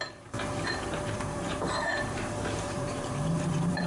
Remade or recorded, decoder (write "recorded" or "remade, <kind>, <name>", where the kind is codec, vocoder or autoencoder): remade, vocoder, BigVGAN v2